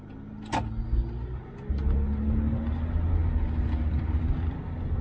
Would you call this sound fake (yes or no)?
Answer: no